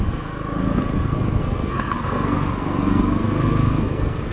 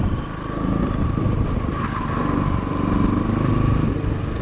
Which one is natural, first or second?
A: second